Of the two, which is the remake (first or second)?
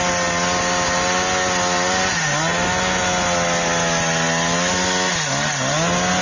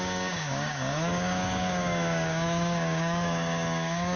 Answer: second